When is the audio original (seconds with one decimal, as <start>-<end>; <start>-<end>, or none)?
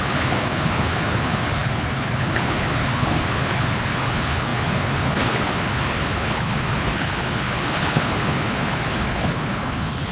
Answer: none